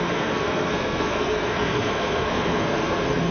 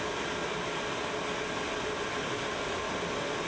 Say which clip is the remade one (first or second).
first